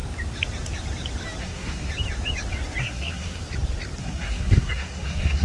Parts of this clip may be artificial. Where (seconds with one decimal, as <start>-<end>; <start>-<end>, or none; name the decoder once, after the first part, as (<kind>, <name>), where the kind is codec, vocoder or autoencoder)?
1.4-1.9 (codec, SNAC); 2.8-3.4; 4.0-5.4